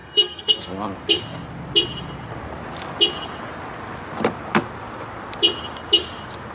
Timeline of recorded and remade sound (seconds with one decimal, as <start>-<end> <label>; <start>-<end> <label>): 0.0-0.6 remade; 0.6-6.5 recorded

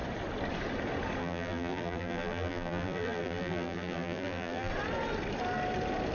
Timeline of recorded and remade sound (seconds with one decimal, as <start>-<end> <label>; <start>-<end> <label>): 0.0-1.2 recorded; 1.2-4.7 remade; 4.7-6.1 recorded

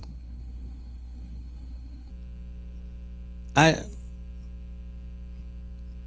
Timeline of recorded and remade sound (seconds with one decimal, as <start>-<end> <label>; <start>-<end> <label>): 0.0-2.1 remade; 2.1-6.1 recorded

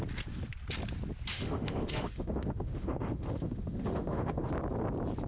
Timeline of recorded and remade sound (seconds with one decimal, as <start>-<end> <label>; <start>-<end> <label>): 0.0-1.3 recorded; 1.3-4.5 remade; 4.5-5.3 recorded

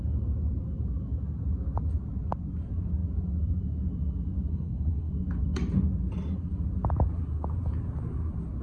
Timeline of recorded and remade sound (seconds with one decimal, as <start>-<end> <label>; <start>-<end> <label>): 0.0-4.5 recorded; 4.5-5.1 remade; 5.1-8.6 recorded

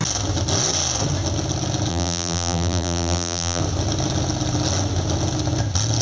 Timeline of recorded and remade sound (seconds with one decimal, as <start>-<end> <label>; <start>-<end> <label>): 0.0-1.9 recorded; 1.9-3.6 remade; 3.6-6.0 recorded

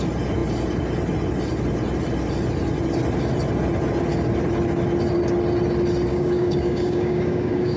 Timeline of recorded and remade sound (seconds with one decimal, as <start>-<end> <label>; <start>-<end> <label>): 0.0-6.1 recorded; 6.1-7.8 remade